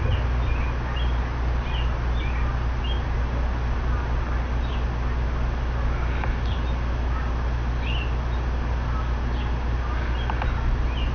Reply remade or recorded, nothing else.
recorded